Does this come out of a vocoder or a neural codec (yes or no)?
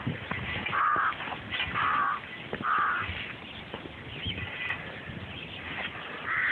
no